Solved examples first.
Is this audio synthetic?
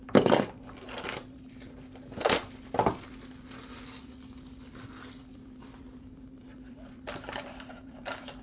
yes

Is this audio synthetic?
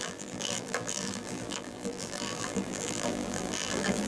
yes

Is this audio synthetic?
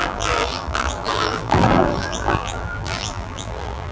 yes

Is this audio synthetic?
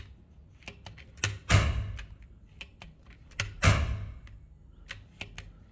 no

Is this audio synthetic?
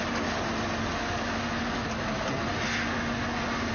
no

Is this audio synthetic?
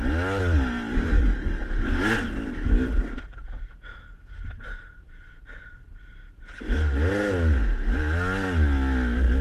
no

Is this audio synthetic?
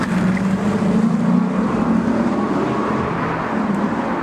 no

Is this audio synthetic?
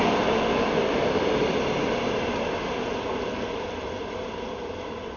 no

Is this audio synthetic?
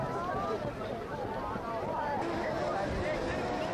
no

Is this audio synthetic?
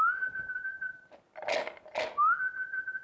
no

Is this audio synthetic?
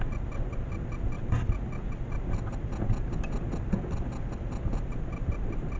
no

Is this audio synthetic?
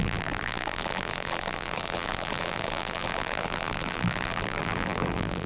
yes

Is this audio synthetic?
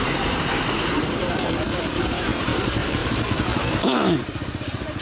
yes